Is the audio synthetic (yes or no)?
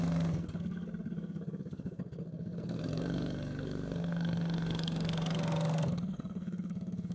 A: yes